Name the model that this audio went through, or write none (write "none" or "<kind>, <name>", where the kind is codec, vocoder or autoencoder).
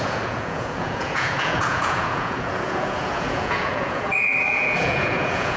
vocoder, Vocos